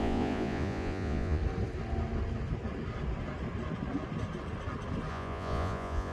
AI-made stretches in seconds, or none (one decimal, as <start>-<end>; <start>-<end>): 0.0-1.4; 5.1-6.1